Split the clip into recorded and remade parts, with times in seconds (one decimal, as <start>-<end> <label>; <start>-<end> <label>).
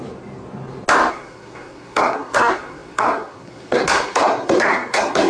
0.0-1.1 recorded; 1.1-5.3 remade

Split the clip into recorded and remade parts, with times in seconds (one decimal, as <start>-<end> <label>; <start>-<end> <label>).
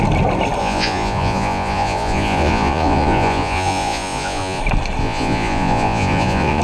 0.0-0.6 recorded; 0.6-4.6 remade; 4.6-5.0 recorded; 5.0-6.6 remade